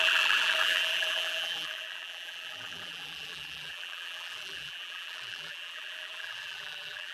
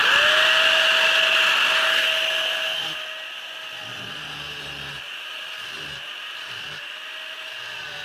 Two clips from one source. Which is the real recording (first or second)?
second